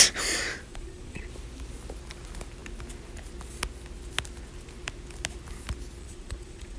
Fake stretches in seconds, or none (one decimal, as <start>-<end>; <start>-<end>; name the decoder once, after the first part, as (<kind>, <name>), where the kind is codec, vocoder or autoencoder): 0.7-1.3 (vocoder, Vocos); 6.0-6.8